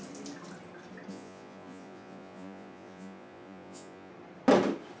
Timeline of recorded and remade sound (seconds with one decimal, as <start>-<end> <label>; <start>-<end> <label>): 0.0-1.1 recorded; 1.1-4.1 remade; 4.1-5.0 recorded